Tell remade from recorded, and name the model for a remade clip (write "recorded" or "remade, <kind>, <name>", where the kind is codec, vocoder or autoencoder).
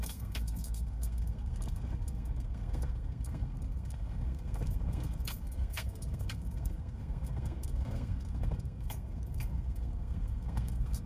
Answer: remade, codec, SNAC